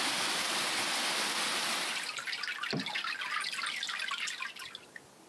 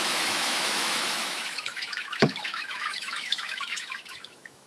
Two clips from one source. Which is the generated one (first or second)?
second